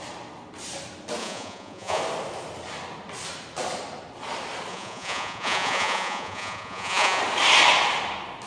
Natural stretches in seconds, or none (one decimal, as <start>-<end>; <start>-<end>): 0.0-1.2; 2.0-4.7; 7.2-8.5